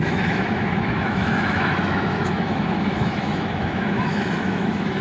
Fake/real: fake